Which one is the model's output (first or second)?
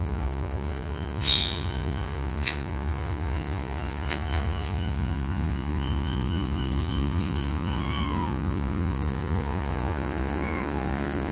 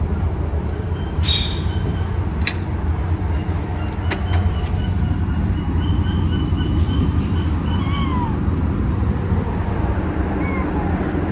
first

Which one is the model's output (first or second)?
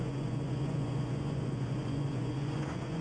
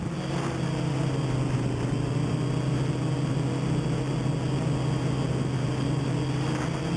first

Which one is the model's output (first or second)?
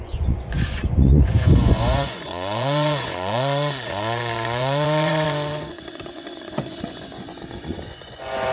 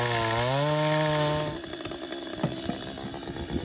first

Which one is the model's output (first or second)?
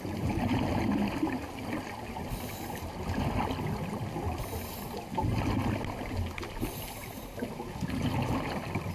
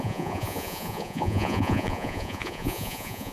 second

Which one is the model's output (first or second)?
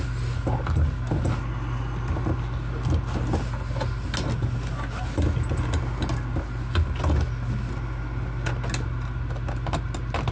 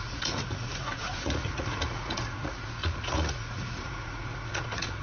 second